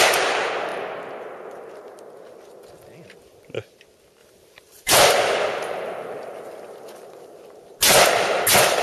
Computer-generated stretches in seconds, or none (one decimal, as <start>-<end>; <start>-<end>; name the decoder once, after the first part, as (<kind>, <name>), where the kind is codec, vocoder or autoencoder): 4.2-4.9 (vocoder, BigVGAN v2)